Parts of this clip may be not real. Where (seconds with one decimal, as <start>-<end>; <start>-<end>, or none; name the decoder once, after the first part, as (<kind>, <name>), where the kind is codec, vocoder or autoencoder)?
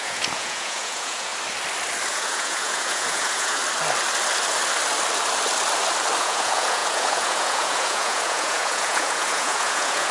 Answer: 0.0-1.3 (vocoder, Vocos); 2.1-3.6; 6.2-10.1